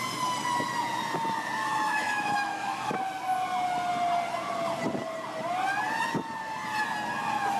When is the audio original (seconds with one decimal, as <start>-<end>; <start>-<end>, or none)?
0.0-1.7; 2.9-7.6